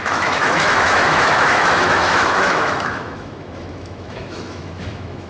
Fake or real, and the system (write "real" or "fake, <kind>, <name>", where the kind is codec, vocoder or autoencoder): fake, autoencoder, DAC-VAE